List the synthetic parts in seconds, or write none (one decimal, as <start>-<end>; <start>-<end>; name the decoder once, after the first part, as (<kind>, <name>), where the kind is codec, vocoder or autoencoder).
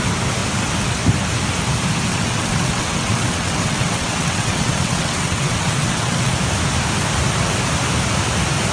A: 2.1-6.3 (vocoder, WaveNeXt)